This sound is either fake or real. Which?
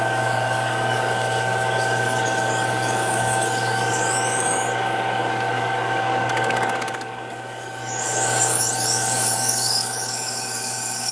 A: fake